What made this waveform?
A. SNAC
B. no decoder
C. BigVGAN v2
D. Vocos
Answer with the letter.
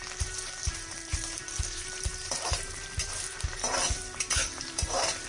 C